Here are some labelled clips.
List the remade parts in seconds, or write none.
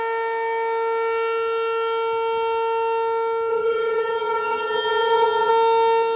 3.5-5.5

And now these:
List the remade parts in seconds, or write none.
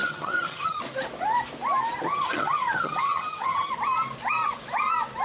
0.0-0.8; 2.1-3.7